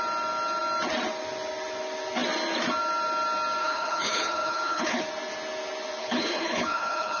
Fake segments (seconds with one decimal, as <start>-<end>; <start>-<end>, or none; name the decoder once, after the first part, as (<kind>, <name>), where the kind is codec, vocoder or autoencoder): 3.6-5.0 (codec, HILCodec); 6.0-7.2